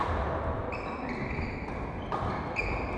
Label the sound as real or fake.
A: real